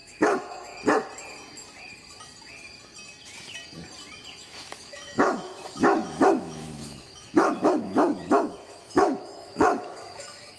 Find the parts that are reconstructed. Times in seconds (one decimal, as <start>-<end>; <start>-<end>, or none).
0.0-0.7; 4.4-10.6

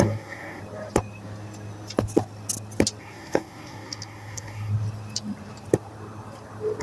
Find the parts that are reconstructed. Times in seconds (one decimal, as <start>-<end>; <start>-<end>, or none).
0.0-0.6; 3.0-4.7

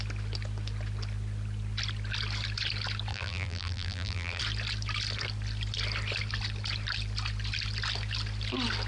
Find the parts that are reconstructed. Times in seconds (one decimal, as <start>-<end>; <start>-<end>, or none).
3.1-4.4

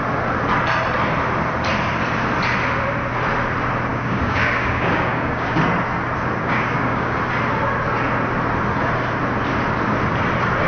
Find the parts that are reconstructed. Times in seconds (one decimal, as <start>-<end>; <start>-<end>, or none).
3.9-5.6; 6.4-7.2

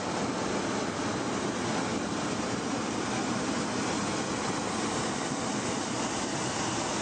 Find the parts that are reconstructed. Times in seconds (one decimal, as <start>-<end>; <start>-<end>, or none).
1.9-6.1

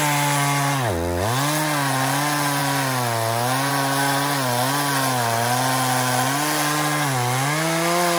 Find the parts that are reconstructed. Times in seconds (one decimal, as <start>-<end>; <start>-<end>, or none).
none